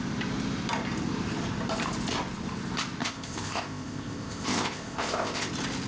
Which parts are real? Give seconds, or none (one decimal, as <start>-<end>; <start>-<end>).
0.0-3.0; 5.5-5.9